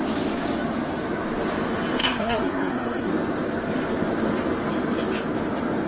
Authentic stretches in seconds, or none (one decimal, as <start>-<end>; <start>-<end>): 0.0-2.0; 3.1-5.9